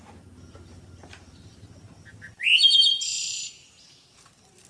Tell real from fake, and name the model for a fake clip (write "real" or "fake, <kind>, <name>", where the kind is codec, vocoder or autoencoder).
real